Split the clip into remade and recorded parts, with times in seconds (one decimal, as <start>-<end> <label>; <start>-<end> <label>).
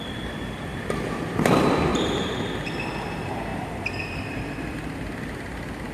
0.0-1.9 recorded; 1.9-2.5 remade; 2.5-3.5 recorded; 3.5-5.9 remade